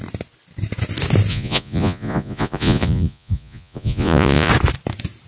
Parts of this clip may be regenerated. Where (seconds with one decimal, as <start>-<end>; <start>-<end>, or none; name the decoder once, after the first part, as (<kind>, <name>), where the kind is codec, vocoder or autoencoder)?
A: 1.3-4.5 (vocoder, Vocos)